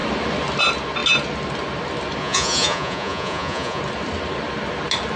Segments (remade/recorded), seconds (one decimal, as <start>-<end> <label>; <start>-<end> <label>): 0.0-2.2 recorded; 2.2-3.8 remade; 3.8-5.2 recorded